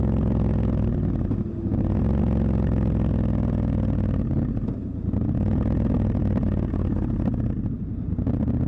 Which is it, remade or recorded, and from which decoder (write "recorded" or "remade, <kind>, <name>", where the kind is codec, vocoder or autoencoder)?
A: recorded